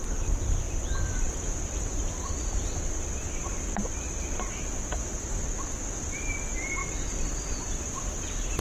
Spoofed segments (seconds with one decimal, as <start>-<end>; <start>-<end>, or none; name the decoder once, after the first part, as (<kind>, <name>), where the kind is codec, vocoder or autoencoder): 6.8-7.8 (vocoder, BigVGAN v2)